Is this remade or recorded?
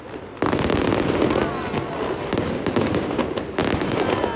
recorded